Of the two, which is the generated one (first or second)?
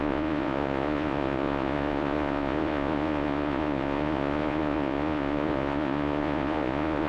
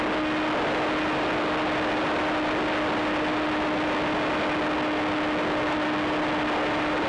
first